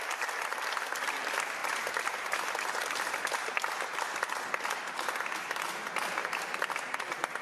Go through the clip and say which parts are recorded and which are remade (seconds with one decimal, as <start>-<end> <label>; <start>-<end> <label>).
0.0-6.2 recorded; 6.2-7.0 remade; 7.0-7.4 recorded